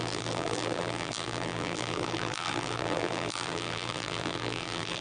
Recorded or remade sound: remade